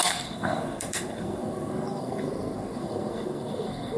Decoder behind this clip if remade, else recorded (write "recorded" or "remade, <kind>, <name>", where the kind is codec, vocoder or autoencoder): remade, codec, SNAC